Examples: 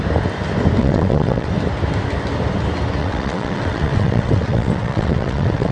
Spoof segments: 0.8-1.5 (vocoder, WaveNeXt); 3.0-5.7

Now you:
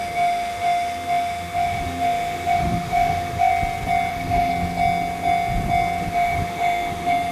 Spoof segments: 0.0-3.5 (autoencoder, DAC-VAE); 4.1-4.5; 6.1-7.3

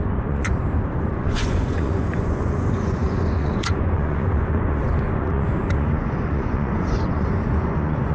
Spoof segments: 0.0-0.5 (vocoder, Vocos); 1.1-8.1

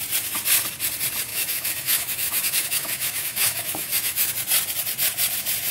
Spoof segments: 1.3-4.3 (autoencoder, DAC-VAE)

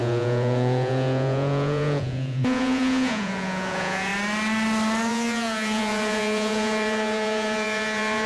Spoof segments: 0.0-4.1 (vocoder, Vocos); 5.1-8.3

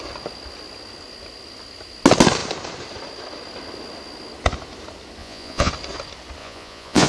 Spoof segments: 5.2-5.7 (vocoder, Vocos); 6.4-7.1